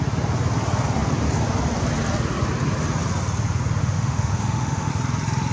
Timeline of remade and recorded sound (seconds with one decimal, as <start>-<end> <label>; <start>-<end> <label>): 0.0-3.8 recorded; 3.8-4.9 remade; 4.9-5.5 recorded